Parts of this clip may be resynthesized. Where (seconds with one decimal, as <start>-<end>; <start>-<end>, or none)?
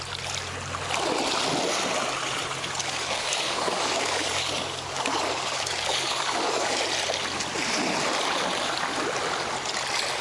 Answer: 2.8-6.8